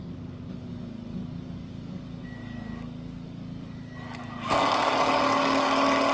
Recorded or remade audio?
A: remade